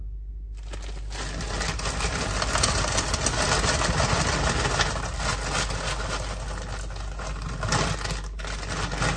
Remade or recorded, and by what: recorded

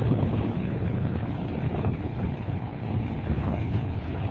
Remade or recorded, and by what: remade, codec, HILCodec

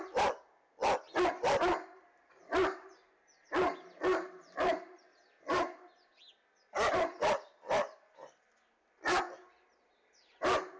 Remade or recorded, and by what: recorded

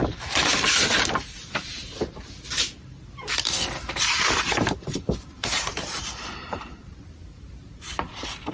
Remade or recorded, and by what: remade, vocoder, BigVGAN v2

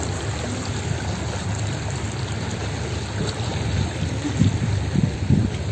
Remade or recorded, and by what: recorded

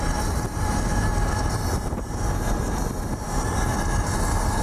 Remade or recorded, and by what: recorded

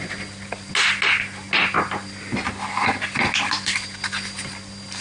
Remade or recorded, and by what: recorded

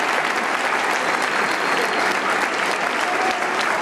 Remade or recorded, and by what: recorded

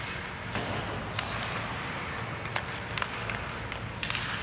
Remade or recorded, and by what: recorded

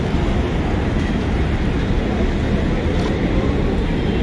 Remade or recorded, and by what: recorded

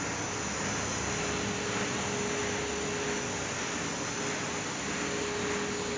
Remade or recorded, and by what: recorded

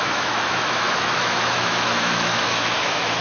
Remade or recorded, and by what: remade, autoencoder, DAC-VAE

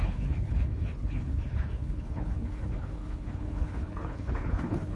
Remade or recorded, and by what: remade, codec, HILCodec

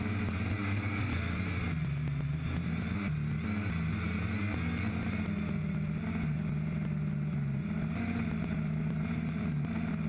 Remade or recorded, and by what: recorded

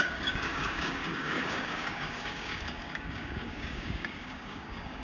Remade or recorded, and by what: remade, codec, DAC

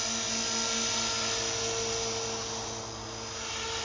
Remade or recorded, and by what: recorded